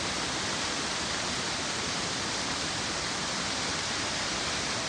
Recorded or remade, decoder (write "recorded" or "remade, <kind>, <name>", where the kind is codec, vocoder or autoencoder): recorded